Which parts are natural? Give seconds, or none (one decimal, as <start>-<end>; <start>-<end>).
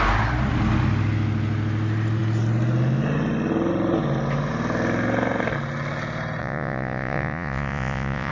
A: 0.0-6.4